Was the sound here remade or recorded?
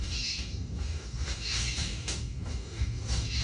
remade